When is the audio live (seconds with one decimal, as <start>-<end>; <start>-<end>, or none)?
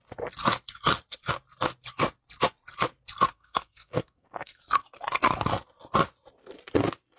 0.0-3.3; 4.6-7.2